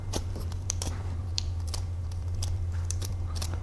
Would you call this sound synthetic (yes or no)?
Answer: yes